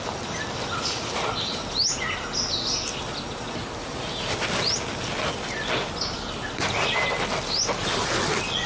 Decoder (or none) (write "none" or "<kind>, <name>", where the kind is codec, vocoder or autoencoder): none